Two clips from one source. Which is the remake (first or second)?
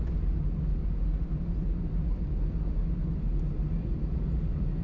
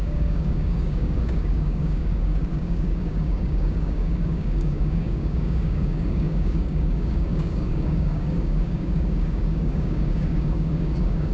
second